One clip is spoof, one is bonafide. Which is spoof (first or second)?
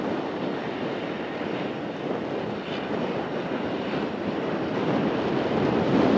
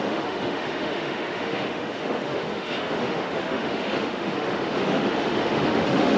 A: second